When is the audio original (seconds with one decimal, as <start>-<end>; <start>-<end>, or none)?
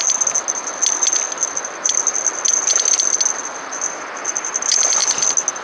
0.0-5.6